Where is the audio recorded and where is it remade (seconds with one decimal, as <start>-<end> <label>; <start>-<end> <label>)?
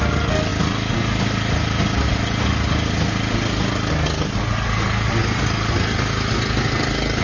0.0-7.2 recorded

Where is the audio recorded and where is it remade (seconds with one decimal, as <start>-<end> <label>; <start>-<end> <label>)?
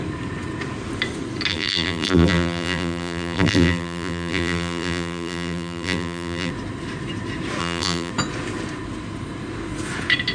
0.0-1.5 recorded; 1.5-6.5 remade; 6.5-7.6 recorded; 7.6-8.1 remade; 8.1-10.3 recorded